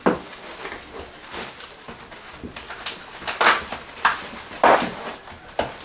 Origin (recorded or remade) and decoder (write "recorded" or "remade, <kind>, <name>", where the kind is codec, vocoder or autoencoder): recorded